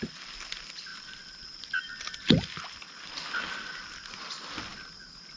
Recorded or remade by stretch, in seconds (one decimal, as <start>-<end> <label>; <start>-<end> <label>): 0.0-0.9 recorded; 0.9-3.7 remade; 3.7-5.4 recorded